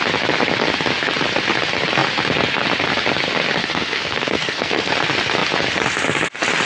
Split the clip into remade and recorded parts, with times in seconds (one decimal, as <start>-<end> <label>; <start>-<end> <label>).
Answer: 0.0-3.6 recorded; 3.6-4.9 remade; 4.9-6.7 recorded